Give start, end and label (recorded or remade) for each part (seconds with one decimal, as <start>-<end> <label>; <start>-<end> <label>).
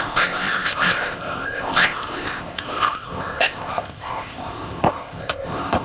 0.0-5.8 remade